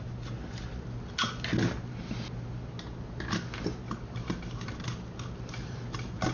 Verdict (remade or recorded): recorded